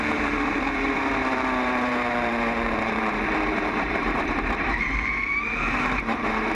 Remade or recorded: remade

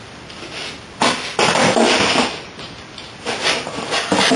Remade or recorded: recorded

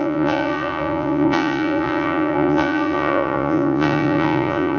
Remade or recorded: remade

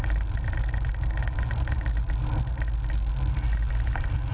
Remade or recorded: recorded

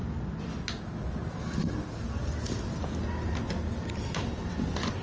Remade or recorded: recorded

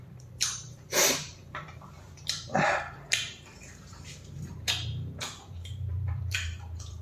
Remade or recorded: remade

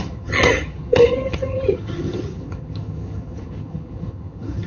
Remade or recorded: remade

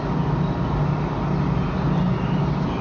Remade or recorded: recorded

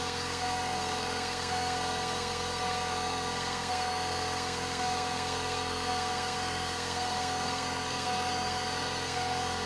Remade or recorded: remade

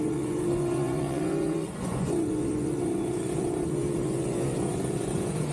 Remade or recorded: remade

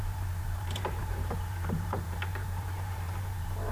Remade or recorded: remade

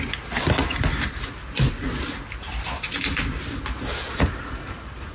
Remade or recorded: recorded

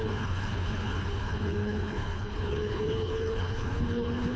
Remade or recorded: remade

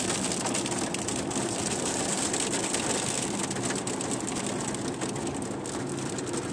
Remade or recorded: recorded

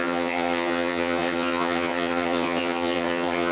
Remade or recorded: remade